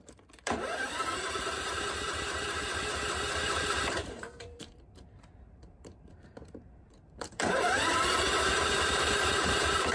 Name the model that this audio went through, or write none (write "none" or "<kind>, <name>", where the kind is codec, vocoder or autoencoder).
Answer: vocoder, BigVGAN v2